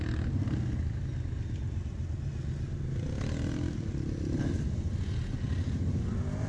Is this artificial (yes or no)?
no